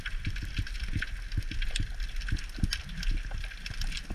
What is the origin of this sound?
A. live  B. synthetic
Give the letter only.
A